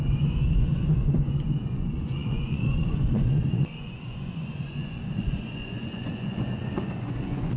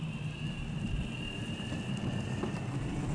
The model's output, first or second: first